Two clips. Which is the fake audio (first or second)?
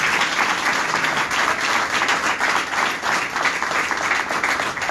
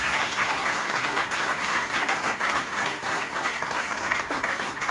second